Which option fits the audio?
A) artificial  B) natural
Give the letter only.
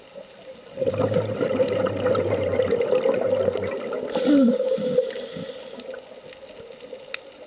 B